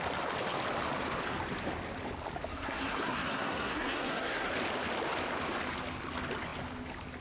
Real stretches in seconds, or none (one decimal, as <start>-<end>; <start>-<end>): 0.0-2.5; 4.5-7.2